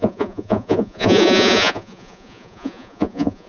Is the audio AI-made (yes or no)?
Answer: yes